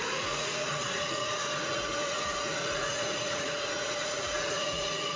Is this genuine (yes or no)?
no